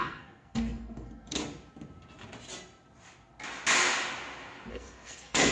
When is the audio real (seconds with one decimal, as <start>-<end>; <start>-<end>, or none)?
1.4-4.7